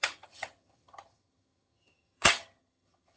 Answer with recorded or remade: remade